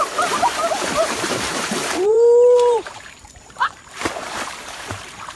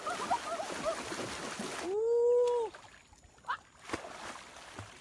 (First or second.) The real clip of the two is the second